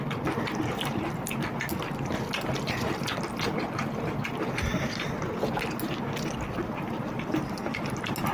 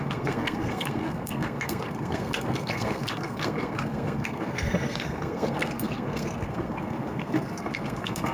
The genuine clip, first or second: first